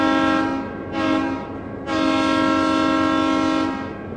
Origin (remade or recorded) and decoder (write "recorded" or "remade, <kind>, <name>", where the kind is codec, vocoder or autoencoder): recorded